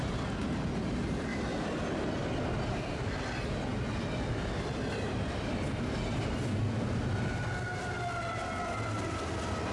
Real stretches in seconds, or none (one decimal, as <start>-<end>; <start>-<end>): 0.0-9.7